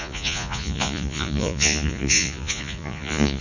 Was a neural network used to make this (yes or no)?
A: yes